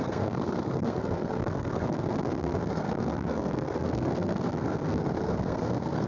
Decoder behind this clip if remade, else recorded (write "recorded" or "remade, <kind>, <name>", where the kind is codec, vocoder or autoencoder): remade, codec, SNAC